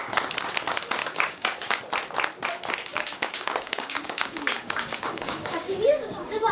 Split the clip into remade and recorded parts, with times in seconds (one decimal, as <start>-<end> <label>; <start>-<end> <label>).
0.0-1.0 recorded; 1.0-1.8 remade; 1.8-2.9 recorded; 2.9-6.5 remade